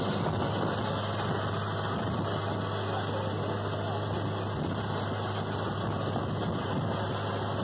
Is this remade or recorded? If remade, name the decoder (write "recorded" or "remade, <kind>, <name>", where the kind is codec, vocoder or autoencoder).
recorded